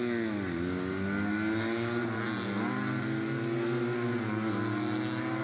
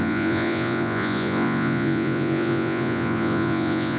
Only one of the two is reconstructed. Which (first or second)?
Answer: second